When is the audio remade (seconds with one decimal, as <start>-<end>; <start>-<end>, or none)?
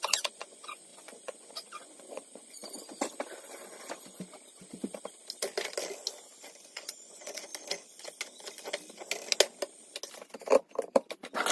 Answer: 0.0-2.6; 6.5-7.5